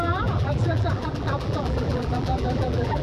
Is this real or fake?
fake